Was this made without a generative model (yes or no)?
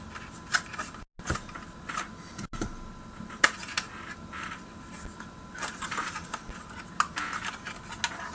yes